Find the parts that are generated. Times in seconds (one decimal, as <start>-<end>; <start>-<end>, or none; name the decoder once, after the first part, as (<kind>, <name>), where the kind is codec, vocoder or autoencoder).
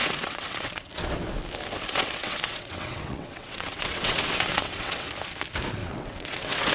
0.0-0.9 (vocoder, WaveNeXt); 1.9-5.1; 5.8-6.7